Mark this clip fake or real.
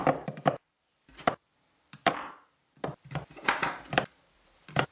fake